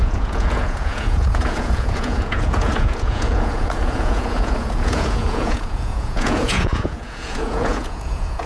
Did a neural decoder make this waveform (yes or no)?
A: yes